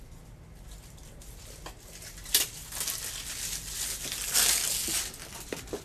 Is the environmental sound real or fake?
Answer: real